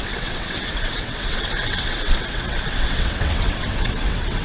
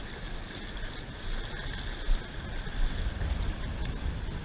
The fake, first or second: first